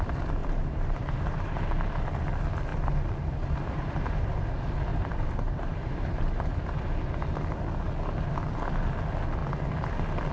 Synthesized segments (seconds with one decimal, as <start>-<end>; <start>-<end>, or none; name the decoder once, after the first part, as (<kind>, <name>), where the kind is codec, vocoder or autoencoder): 0.4-1.6 (vocoder, BigVGAN v2); 2.7-4.3; 4.9-6.5